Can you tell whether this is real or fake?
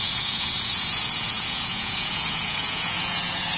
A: fake